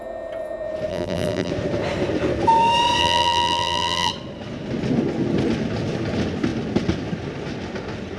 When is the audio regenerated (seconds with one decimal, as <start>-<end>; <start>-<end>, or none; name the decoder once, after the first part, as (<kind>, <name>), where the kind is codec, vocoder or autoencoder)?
0.9-1.5 (vocoder, BigVGAN v2); 3.0-4.1